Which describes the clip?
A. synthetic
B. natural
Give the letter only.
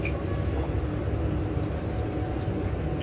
B